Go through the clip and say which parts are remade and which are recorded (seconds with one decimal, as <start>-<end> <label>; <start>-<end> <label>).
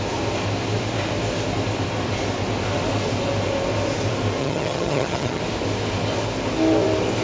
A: 0.0-4.4 recorded; 4.4-5.4 remade; 5.4-7.2 recorded